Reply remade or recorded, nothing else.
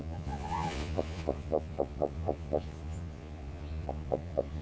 remade